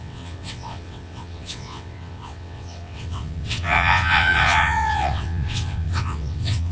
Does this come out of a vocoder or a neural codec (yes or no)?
yes